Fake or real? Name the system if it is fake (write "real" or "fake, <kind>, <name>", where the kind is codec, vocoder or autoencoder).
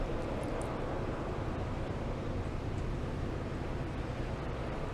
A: real